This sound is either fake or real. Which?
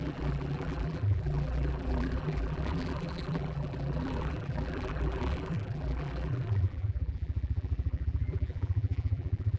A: fake